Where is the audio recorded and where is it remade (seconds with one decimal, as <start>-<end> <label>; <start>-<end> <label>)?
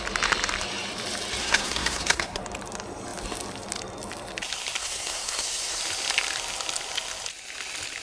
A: 0.0-1.4 recorded; 1.4-2.4 remade; 2.4-4.8 recorded; 4.8-5.8 remade; 5.8-8.0 recorded